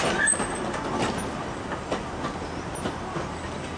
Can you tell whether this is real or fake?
real